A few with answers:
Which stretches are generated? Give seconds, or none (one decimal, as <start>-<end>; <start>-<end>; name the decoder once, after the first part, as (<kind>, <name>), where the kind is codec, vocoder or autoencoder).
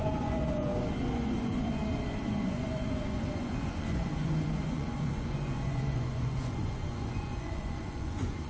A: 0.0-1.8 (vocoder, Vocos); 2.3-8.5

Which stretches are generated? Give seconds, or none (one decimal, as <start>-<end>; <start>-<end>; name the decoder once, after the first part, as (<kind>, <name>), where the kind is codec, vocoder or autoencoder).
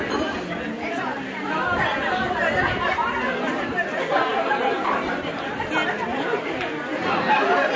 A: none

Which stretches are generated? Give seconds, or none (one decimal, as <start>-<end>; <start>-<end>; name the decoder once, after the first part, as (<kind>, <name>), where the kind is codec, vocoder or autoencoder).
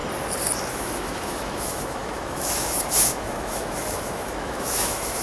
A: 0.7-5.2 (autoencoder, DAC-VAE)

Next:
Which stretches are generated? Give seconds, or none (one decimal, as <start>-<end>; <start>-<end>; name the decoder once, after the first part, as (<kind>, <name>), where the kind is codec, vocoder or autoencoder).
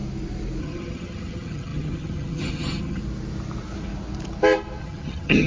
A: 0.6-3.0 (vocoder, HiFi-GAN); 4.8-5.5